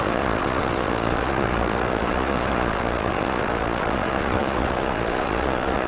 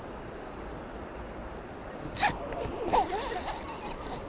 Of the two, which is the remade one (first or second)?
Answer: first